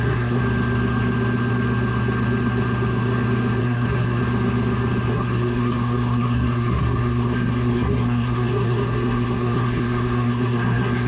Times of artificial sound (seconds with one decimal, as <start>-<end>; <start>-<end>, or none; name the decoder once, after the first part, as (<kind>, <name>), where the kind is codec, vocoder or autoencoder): 0.0-0.4 (codec, SNAC); 3.6-4.2; 5.1-11.1